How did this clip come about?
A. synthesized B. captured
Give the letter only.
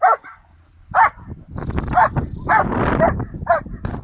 B